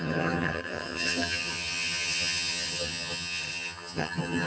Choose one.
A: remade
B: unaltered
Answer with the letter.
A